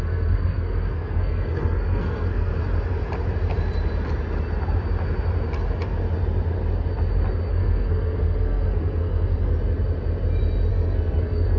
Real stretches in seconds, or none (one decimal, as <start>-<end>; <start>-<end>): 2.5-7.5; 9.5-10.7